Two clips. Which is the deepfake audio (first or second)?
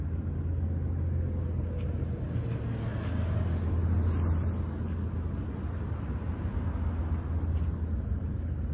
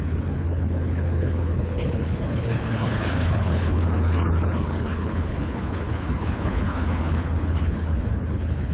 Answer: second